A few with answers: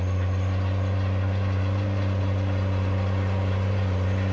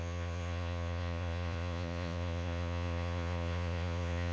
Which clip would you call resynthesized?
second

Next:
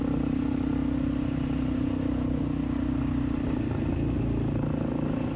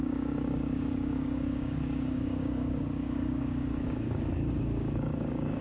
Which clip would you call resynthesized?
second